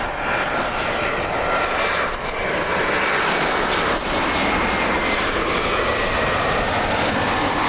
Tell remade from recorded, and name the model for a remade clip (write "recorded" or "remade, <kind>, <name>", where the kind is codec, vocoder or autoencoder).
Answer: recorded